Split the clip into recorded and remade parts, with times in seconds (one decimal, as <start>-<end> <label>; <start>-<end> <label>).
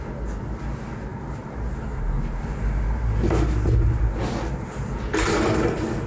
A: 0.0-6.1 recorded